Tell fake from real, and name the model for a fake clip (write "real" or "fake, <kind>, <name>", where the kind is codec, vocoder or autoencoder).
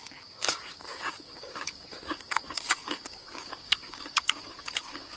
fake, codec, DAC